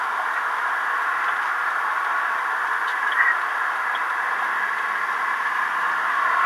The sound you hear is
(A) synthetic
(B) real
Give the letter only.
B